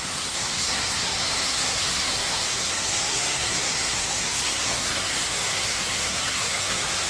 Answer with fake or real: fake